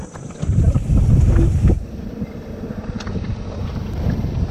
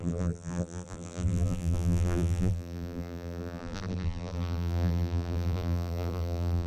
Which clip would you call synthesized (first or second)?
second